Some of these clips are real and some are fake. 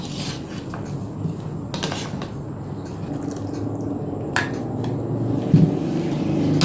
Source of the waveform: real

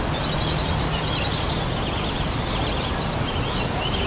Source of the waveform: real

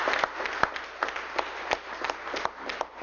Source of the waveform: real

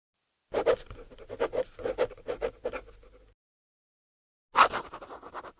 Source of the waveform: real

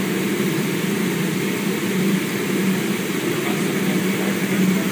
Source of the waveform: fake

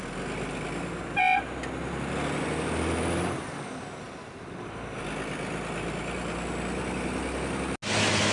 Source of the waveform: real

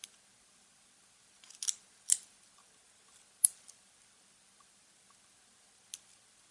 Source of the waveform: real